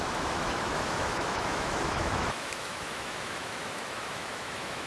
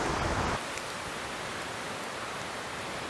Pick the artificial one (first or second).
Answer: first